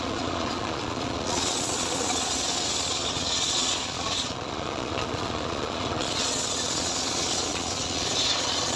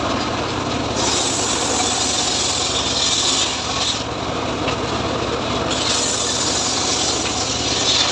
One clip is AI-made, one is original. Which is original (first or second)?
second